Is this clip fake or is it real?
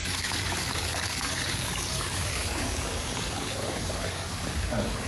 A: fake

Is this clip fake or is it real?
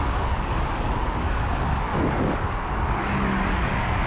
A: fake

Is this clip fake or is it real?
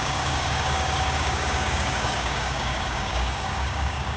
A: fake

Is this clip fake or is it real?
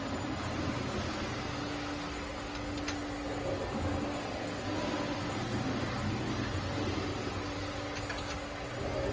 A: real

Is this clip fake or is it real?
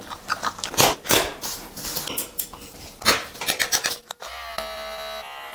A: real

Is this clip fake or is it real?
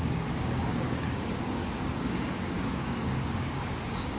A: fake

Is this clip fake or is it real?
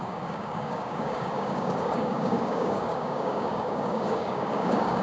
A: fake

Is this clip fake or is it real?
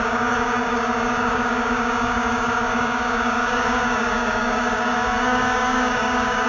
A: fake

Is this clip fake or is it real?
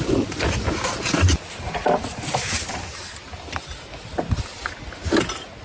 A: real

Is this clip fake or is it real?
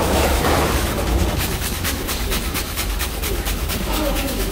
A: fake